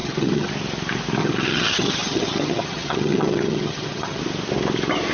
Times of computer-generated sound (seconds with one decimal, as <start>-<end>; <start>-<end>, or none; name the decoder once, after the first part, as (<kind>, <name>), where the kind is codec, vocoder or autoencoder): 0.0-0.5 (vocoder, HiFi-GAN); 1.2-4.2